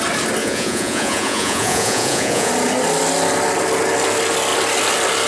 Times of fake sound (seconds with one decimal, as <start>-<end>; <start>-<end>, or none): 0.4-2.5